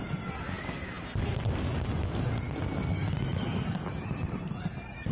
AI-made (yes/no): no